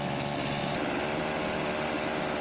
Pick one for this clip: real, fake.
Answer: real